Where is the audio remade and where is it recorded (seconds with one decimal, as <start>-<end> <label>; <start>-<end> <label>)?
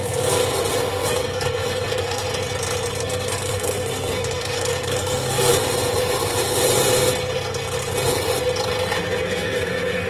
0.0-0.4 remade; 0.4-0.9 recorded; 0.9-2.2 remade; 2.2-3.0 recorded; 3.0-5.5 remade; 5.5-9.2 recorded; 9.2-10.1 remade